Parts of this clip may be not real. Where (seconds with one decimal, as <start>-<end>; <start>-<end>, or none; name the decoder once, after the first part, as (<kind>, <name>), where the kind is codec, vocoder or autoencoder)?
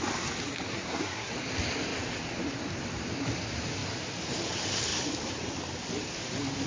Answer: 0.7-1.3 (codec, SNAC)